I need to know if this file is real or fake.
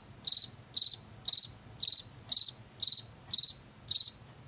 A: real